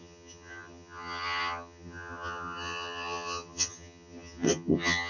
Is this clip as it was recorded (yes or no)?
no